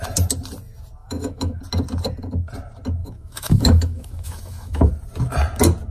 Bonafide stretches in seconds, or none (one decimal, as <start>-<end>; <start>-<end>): 0.0-1.0; 1.6-3.0; 4.9-5.9